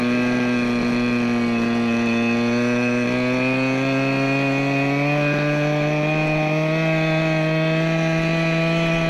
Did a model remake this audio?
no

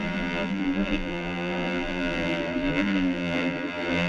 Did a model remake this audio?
yes